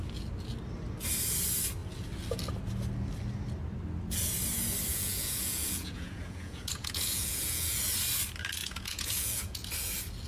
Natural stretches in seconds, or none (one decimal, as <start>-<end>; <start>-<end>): 0.0-4.9; 7.8-8.6; 9.7-10.3